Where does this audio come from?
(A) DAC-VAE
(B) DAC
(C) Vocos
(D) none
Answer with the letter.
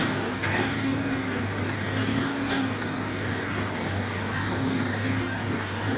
B